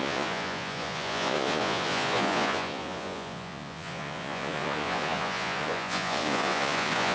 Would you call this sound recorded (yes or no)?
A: no